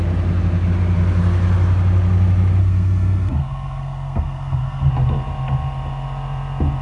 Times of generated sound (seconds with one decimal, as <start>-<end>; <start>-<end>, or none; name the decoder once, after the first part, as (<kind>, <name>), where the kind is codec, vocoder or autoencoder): 2.6-4.9 (codec, SNAC)

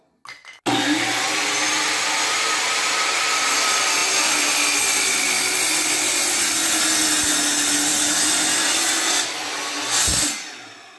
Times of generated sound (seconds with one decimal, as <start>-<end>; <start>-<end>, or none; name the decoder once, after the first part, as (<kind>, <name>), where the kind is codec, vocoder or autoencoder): none

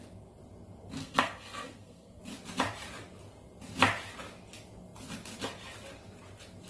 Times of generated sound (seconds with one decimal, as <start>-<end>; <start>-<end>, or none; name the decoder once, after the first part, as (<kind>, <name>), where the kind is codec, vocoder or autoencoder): 1.0-2.2 (codec, SNAC)

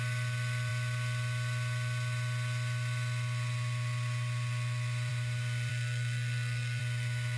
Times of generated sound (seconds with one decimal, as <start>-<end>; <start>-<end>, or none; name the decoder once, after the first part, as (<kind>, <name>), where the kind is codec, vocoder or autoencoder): 5.7-6.8 (codec, SNAC)

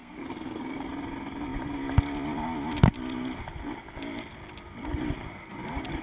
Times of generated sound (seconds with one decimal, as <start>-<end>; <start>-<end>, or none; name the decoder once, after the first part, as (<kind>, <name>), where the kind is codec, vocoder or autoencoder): 0.0-0.9 (codec, SNAC)

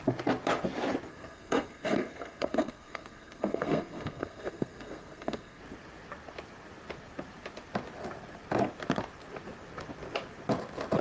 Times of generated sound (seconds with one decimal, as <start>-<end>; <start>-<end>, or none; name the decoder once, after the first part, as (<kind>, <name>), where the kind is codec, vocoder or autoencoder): 1.1-5.6 (codec, SNAC)

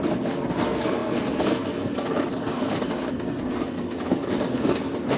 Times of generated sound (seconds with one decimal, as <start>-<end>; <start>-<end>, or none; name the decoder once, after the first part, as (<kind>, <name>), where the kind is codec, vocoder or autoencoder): 0.0-5.2 (codec, SNAC)